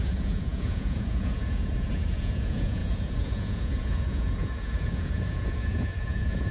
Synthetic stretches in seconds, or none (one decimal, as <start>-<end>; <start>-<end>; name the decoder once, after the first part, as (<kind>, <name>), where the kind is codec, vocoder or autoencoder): 0.0-6.5 (vocoder, Vocos)